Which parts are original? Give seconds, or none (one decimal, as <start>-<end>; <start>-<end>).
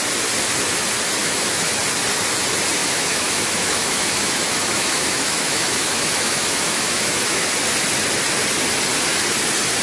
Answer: 0.0-1.2; 1.8-2.8; 7.5-9.8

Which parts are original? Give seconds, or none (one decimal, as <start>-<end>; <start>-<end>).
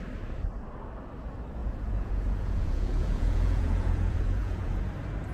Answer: 0.0-1.6; 4.8-5.3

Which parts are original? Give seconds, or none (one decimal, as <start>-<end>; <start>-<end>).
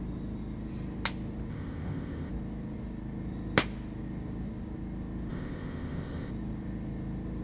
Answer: 0.0-1.5; 2.3-5.3; 6.3-7.4